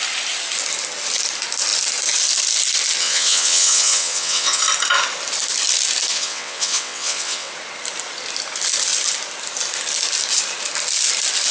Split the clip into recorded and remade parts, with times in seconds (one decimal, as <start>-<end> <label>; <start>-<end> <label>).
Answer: 0.0-3.0 recorded; 3.0-4.6 remade; 4.6-6.1 recorded; 6.1-7.5 remade; 7.5-11.5 recorded